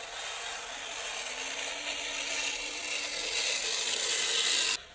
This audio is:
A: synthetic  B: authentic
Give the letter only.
B